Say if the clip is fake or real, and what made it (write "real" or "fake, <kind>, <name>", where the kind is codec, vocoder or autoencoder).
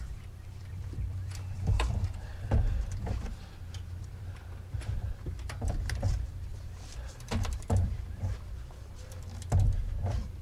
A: fake, vocoder, BigVGAN v2